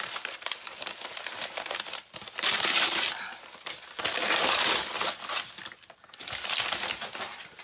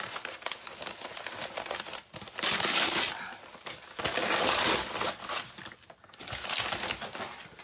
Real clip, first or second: second